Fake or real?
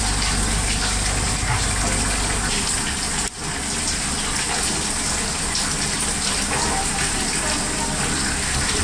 real